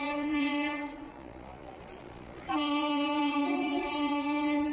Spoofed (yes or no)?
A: yes